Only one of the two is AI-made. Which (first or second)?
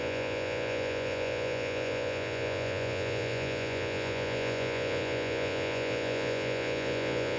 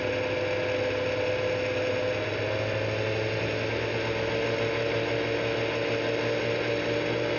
first